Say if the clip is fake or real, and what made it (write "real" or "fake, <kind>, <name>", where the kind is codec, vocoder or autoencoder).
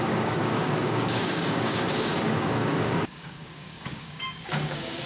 fake, codec, DAC